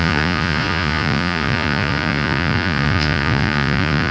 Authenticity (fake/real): fake